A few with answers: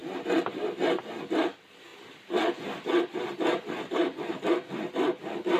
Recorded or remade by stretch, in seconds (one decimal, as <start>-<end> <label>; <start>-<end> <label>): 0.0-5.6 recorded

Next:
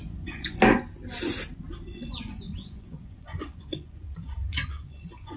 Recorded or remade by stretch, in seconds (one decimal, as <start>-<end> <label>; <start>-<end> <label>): 0.0-0.6 remade; 0.6-1.9 recorded; 1.9-5.4 remade

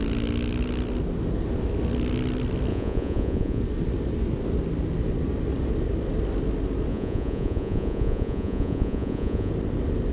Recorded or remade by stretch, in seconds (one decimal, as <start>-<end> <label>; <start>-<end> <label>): 0.0-2.7 recorded; 2.7-3.6 remade; 3.6-6.9 recorded; 6.9-9.5 remade; 9.5-10.1 recorded